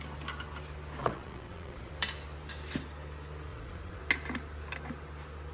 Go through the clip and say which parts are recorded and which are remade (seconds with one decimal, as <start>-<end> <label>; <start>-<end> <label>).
0.0-1.0 recorded; 1.0-1.9 remade; 1.9-3.5 recorded; 3.5-4.0 remade; 4.0-5.5 recorded